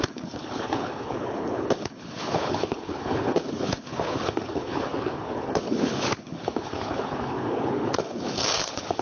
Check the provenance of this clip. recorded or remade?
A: remade